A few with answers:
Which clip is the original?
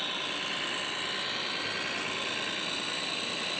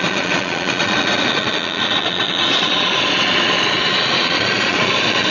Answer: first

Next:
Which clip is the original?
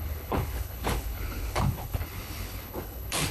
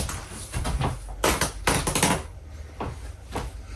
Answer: second